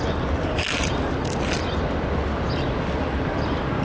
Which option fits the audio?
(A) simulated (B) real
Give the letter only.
B